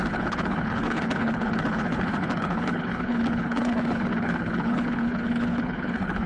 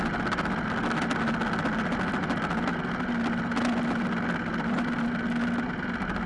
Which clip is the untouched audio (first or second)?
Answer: second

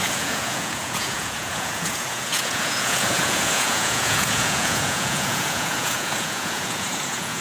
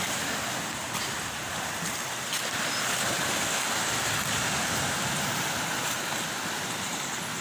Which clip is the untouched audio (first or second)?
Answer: second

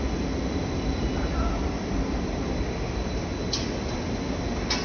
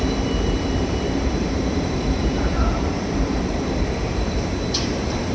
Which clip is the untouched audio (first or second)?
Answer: first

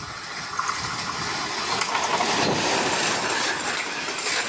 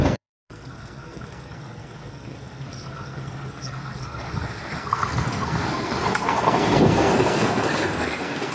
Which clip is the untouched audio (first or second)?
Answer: first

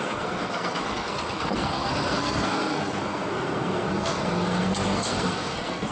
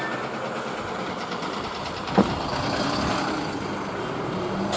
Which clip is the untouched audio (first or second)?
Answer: second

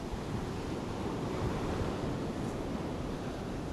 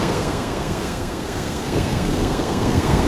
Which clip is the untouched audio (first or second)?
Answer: first